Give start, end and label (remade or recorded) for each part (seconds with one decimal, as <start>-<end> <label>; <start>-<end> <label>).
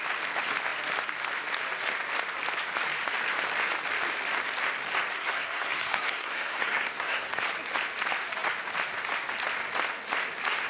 0.0-5.1 recorded; 5.1-7.5 remade; 7.5-10.7 recorded